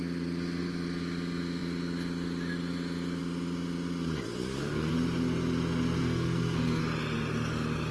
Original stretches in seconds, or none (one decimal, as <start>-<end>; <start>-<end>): 0.0-4.4; 4.9-6.0; 6.8-7.9